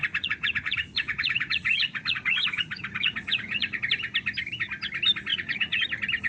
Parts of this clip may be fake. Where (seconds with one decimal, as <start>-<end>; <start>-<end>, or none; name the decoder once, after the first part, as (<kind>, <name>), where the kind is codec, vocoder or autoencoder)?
0.0-3.8 (vocoder, Vocos); 5.3-5.8